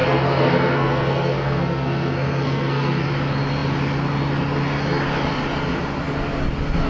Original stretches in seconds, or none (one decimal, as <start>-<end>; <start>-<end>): 3.1-6.9